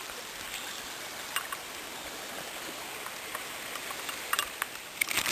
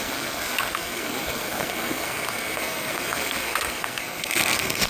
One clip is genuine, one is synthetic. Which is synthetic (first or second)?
second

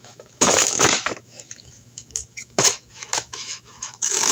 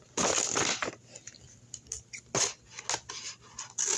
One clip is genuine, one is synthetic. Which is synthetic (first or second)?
first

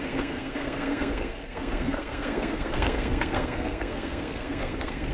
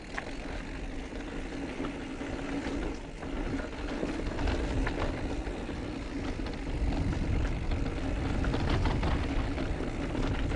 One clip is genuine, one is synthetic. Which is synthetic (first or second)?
first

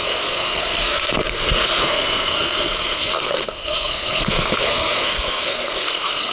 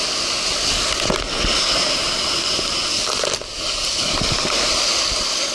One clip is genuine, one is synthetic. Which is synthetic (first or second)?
first